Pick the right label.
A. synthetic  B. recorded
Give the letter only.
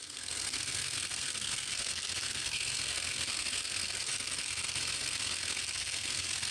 A